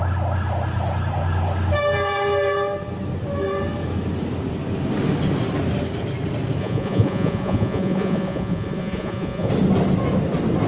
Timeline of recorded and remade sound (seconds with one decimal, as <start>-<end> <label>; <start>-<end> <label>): 0.0-6.6 recorded; 6.6-9.5 remade; 9.5-10.7 recorded